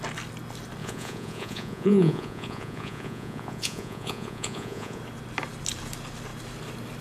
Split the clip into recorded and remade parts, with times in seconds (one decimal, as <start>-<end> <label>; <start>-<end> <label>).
0.0-0.8 recorded; 0.8-5.0 remade; 5.0-7.0 recorded